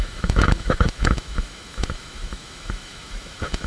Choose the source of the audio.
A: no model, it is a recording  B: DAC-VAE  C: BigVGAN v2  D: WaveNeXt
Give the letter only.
B